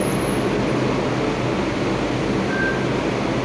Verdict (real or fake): real